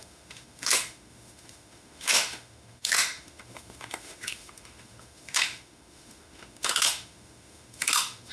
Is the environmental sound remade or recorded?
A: remade